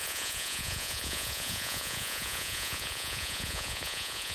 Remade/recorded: remade